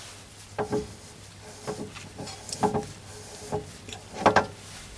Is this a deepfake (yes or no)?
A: no